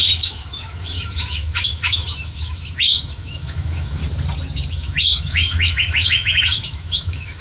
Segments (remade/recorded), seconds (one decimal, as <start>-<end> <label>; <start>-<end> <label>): 0.0-4.0 remade; 4.0-4.7 recorded; 4.7-7.4 remade